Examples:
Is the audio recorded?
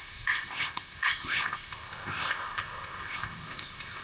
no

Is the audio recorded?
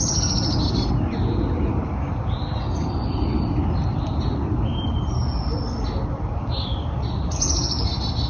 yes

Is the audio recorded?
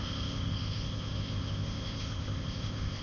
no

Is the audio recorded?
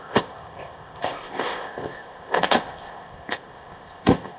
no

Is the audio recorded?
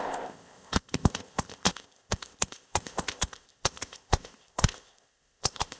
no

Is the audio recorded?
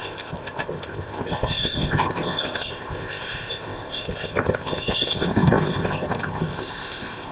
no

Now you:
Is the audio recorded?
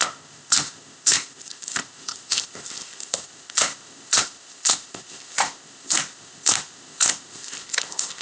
no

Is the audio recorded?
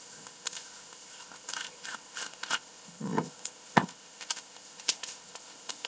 no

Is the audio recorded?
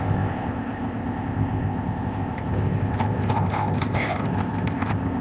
no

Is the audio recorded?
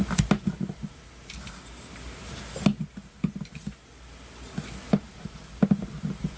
yes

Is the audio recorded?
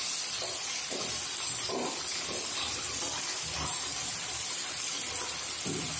yes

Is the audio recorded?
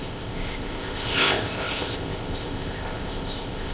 no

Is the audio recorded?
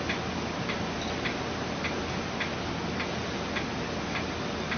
yes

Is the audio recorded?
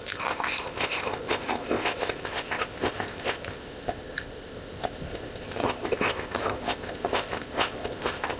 no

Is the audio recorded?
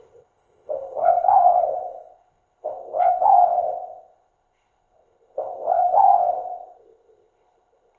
no